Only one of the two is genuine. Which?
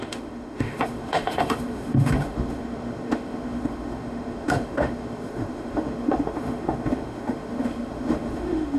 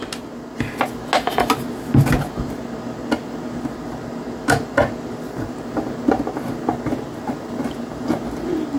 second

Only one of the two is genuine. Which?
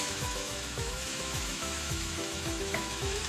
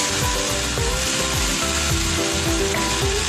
second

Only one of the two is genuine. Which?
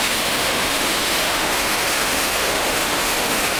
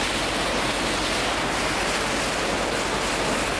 second